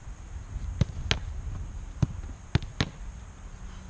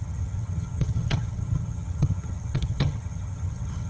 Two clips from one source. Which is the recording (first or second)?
first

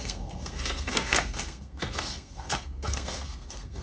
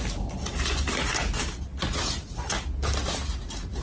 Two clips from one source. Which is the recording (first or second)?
second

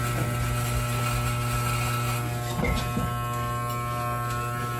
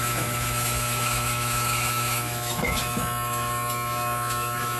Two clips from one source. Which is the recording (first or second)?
first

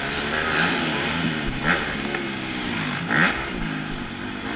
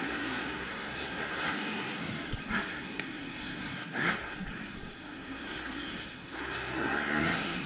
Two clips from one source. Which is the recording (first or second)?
first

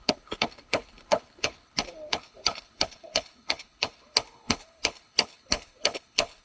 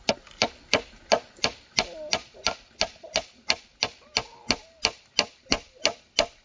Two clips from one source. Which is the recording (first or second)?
second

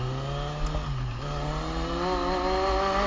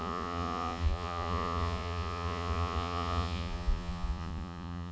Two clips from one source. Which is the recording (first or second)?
first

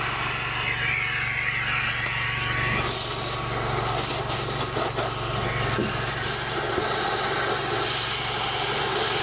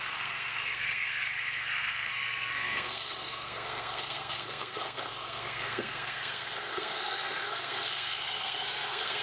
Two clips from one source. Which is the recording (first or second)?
first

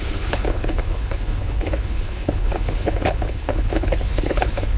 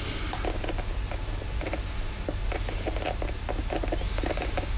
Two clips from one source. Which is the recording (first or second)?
second